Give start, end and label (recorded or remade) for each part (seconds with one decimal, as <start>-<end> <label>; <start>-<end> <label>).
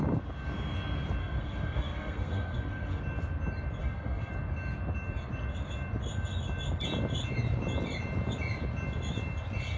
0.0-1.2 recorded; 1.2-3.0 remade; 3.0-3.8 recorded; 3.8-4.3 remade; 4.3-9.8 recorded